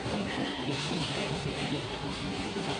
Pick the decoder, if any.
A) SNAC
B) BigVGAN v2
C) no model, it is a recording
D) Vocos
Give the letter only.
A